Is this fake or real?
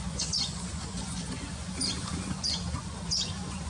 fake